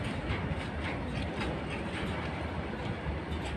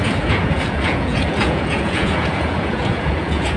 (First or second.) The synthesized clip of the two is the second